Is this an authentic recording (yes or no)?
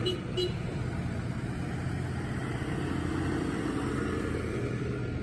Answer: yes